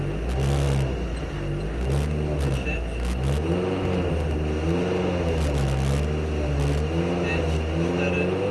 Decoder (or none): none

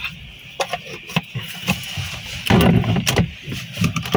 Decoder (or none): none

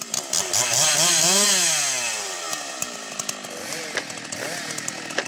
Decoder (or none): none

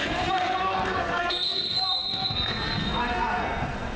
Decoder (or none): codec, SNAC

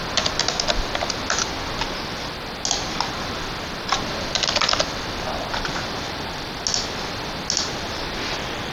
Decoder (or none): none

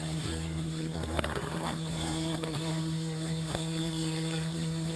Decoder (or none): codec, SNAC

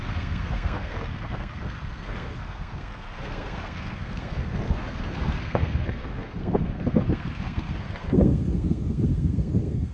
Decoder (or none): codec, SNAC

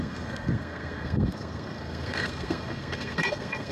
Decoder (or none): codec, SNAC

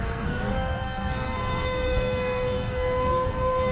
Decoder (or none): codec, SNAC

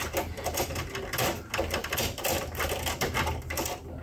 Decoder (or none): none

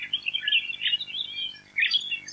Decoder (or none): none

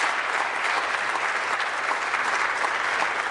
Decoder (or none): none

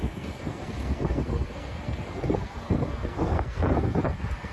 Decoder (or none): codec, SNAC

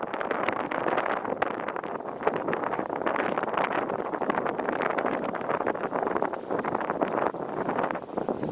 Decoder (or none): none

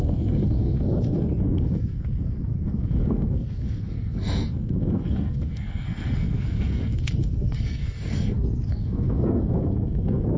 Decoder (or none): codec, SNAC